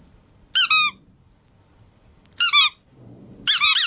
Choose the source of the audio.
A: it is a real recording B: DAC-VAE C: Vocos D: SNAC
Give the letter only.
A